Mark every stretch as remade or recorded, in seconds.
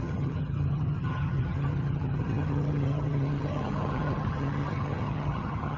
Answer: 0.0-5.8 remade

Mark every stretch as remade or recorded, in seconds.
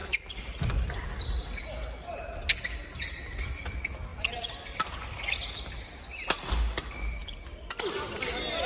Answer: 0.0-0.8 remade; 0.8-4.1 recorded; 4.1-5.2 remade; 5.2-8.7 recorded